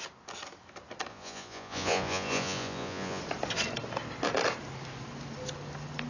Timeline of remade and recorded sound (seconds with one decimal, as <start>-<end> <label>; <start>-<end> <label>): 0.0-1.1 recorded; 1.1-3.2 remade; 3.2-6.1 recorded